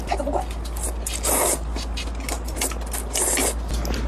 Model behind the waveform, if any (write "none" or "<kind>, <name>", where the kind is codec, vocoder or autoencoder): none